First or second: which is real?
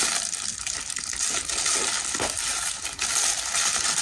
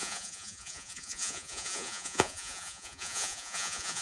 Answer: first